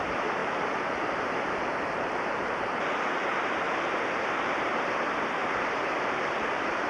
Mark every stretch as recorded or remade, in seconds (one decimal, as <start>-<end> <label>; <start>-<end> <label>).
0.0-0.4 recorded; 0.4-4.5 remade; 4.5-5.4 recorded; 5.4-6.9 remade